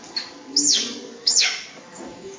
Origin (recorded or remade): remade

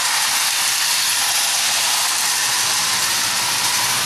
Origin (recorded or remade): recorded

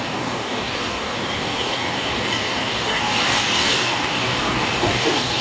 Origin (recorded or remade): remade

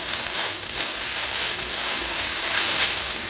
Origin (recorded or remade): remade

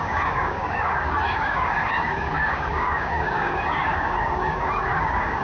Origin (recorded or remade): remade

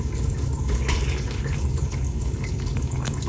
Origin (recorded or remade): remade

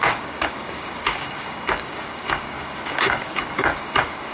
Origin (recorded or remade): remade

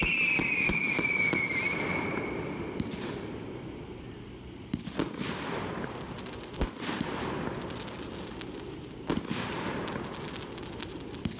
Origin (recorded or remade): recorded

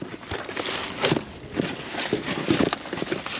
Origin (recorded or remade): recorded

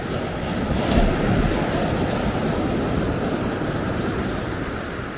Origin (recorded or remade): recorded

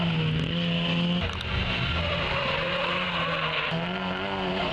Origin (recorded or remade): recorded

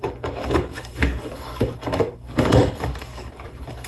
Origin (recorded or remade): remade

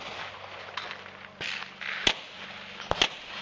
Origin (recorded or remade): recorded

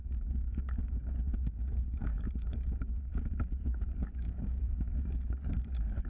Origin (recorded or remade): remade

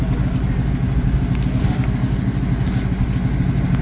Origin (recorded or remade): recorded